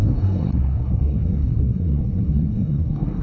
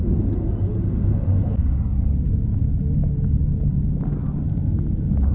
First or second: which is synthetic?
first